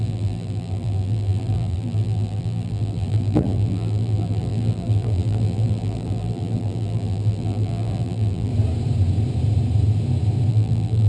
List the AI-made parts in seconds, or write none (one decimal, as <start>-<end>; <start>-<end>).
0.0-8.5; 10.5-11.1